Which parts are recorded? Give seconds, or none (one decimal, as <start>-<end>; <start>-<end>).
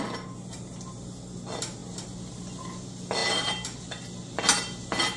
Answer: 0.0-5.2